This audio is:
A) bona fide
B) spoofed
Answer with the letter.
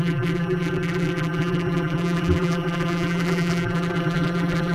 B